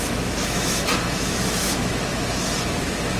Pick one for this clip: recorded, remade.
remade